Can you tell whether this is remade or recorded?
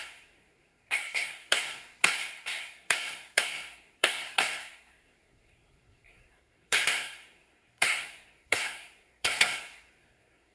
remade